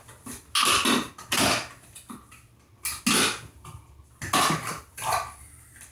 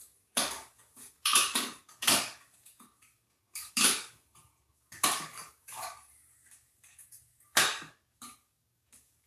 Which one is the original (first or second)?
first